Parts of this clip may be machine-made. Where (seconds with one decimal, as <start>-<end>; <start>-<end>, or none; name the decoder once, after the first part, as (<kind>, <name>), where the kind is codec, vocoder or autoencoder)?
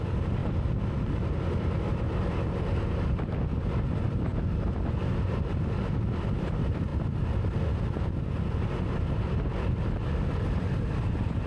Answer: 0.0-4.3 (vocoder, BigVGAN v2); 5.0-11.5